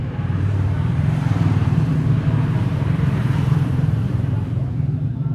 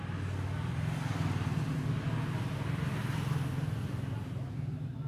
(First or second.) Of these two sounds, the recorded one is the second